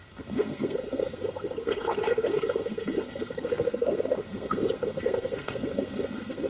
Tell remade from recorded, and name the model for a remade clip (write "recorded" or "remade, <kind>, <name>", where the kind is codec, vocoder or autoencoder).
remade, codec, SNAC